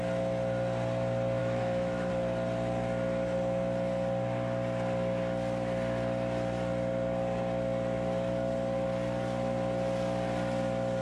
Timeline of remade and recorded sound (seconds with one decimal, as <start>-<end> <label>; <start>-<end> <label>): 0.0-1.4 recorded; 1.4-2.1 remade; 2.1-11.0 recorded